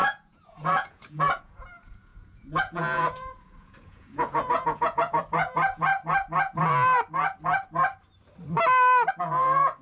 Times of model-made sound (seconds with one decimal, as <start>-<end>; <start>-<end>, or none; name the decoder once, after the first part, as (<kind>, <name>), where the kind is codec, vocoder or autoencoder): 0.0-5.9 (vocoder, Vocos); 9.1-9.8